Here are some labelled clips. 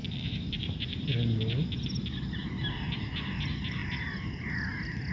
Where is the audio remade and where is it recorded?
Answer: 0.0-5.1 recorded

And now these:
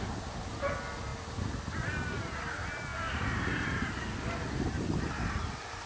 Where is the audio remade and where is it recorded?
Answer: 0.0-5.9 recorded

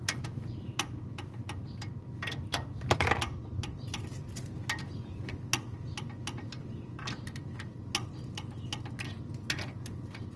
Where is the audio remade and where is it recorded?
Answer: 0.0-10.4 recorded

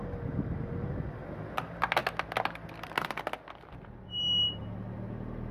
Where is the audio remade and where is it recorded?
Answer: 0.0-5.5 recorded

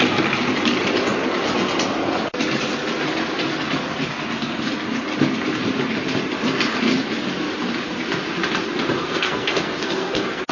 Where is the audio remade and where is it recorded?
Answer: 0.0-9.0 recorded; 9.0-10.5 remade

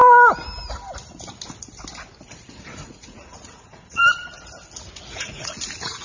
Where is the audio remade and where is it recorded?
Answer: 0.0-2.5 recorded; 2.5-4.0 remade; 4.0-5.1 recorded; 5.1-6.0 remade